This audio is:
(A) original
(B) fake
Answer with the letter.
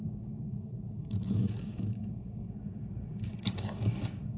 B